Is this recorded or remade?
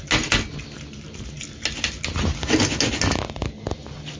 recorded